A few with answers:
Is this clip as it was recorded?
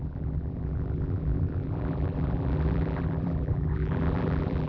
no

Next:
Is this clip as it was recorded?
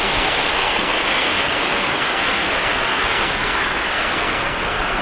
no